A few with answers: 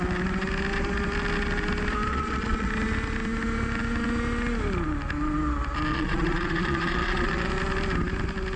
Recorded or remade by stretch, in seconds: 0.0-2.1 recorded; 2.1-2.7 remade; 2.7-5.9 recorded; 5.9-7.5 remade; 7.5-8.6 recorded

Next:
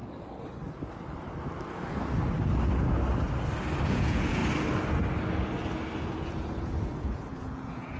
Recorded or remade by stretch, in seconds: 0.0-3.9 recorded; 3.9-4.4 remade; 4.4-6.0 recorded; 6.0-8.0 remade

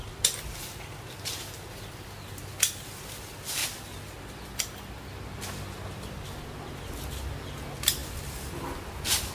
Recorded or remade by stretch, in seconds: 0.0-9.3 recorded